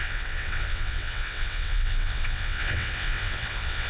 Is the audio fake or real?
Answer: fake